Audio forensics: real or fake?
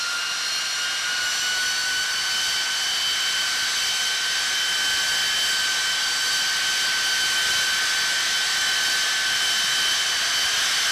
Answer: real